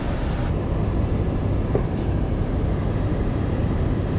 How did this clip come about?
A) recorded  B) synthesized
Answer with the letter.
A